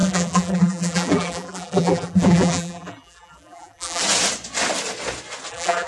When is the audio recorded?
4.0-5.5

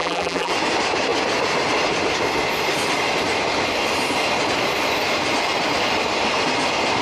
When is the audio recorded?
0.5-7.0

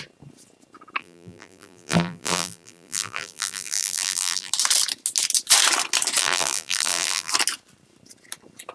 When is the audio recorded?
0.0-1.0; 4.5-6.2; 7.3-8.7

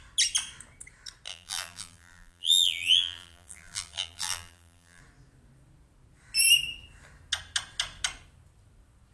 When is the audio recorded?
0.0-1.3; 5.0-9.1